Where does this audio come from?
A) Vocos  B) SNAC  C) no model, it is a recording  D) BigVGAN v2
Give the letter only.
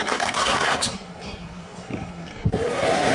B